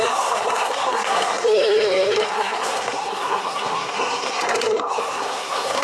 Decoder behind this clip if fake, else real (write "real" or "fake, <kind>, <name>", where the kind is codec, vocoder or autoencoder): fake, codec, SNAC